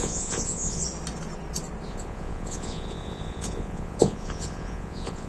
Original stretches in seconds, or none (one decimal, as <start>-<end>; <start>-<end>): 0.8-1.9